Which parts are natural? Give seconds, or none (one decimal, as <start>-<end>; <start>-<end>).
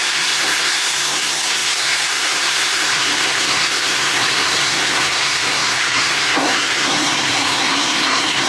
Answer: none